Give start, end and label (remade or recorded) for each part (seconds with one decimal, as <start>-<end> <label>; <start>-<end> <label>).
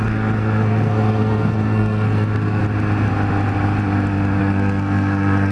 0.0-2.6 remade; 2.6-4.4 recorded; 4.4-5.5 remade